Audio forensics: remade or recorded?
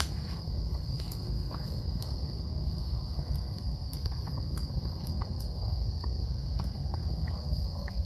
remade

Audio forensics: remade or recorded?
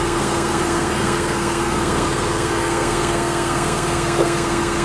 remade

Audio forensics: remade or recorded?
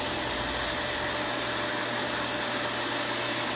recorded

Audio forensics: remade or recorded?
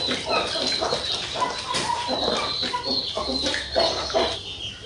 recorded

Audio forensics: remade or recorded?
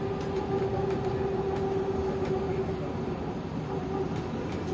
recorded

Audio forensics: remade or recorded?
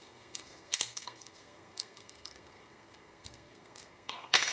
remade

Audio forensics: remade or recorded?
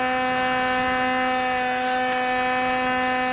recorded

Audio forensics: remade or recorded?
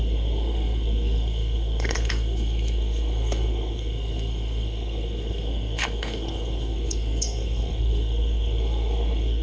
remade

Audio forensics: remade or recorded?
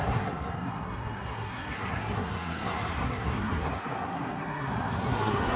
remade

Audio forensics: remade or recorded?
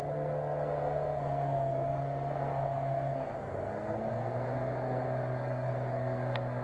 remade